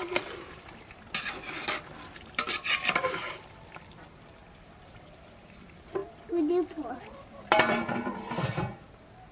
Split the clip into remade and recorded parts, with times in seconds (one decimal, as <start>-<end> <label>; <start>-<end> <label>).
0.0-6.0 remade; 6.0-6.9 recorded; 6.9-9.3 remade